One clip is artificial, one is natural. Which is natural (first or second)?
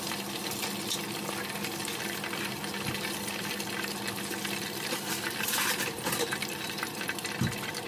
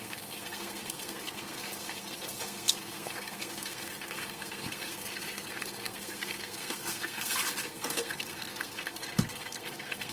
first